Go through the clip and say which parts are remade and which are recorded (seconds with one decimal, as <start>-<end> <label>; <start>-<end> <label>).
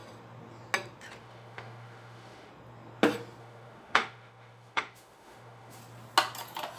0.0-1.2 recorded; 1.2-2.5 remade; 2.5-3.4 recorded; 3.4-5.8 remade; 5.8-6.8 recorded